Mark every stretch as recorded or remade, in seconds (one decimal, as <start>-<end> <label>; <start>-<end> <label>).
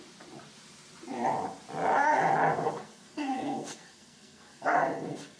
0.0-2.4 recorded; 2.4-5.4 remade